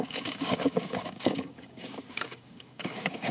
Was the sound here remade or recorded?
remade